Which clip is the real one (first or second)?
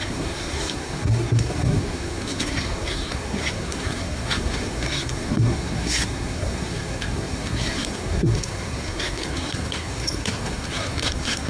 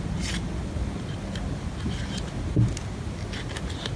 second